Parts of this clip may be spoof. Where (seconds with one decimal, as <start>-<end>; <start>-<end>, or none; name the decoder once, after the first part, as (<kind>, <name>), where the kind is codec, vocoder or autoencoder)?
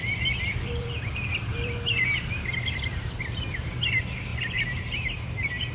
0.0-3.4 (vocoder, BigVGAN v2); 4.3-4.8